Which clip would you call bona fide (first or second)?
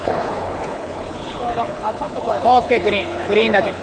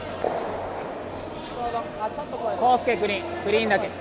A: second